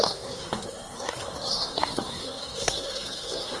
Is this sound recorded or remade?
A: remade